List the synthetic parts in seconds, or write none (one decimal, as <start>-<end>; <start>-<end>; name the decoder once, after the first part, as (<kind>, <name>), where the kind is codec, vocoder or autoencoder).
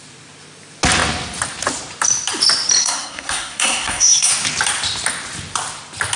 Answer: 2.8-4.3 (codec, SNAC)